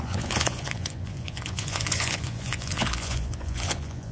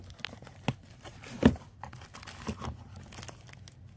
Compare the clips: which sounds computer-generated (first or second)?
first